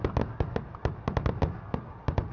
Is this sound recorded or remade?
recorded